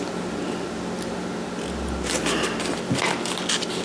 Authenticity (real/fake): real